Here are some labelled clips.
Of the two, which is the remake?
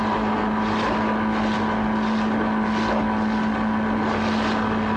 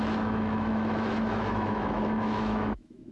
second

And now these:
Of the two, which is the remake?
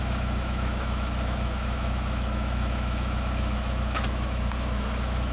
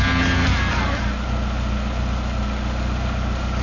first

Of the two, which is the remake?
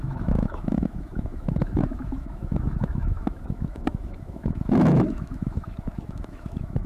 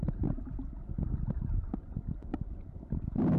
first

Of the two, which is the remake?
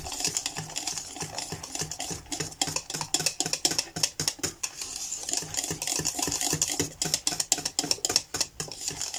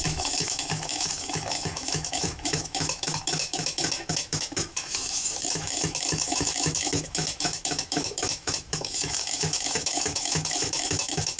second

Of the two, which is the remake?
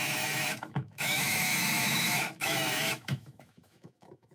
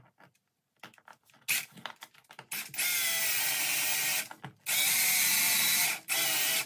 first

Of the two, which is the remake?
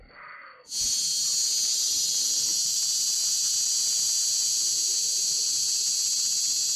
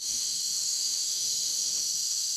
second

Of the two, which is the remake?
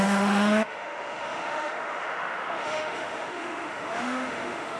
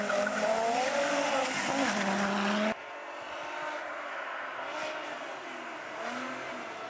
first